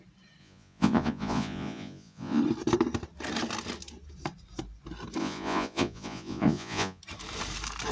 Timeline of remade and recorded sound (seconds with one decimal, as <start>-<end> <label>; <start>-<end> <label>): 0.0-0.4 recorded; 0.4-2.4 remade; 2.4-5.2 recorded; 5.2-7.0 remade; 7.0-7.9 recorded